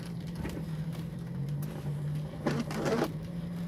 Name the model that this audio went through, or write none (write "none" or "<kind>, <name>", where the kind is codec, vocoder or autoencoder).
vocoder, BigVGAN v2